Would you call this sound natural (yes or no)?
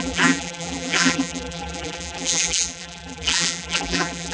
no